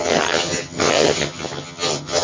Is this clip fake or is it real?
fake